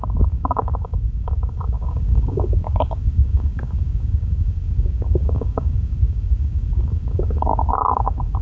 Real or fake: fake